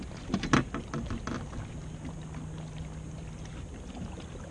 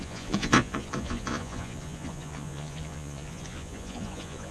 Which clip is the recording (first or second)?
first